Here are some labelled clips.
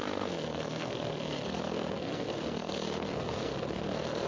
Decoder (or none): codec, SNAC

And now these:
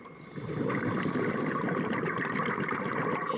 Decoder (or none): none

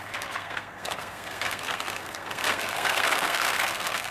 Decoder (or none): codec, SNAC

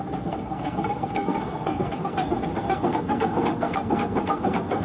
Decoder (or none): codec, SNAC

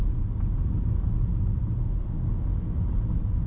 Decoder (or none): none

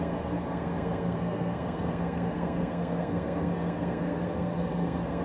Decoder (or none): codec, SNAC